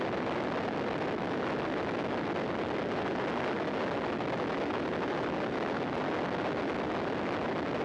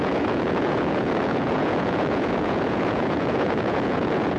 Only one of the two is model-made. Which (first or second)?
second